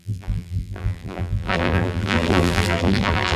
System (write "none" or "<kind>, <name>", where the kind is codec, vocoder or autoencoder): vocoder, BigVGAN v2